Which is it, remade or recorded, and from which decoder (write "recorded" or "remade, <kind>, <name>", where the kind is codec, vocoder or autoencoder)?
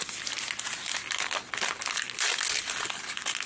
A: recorded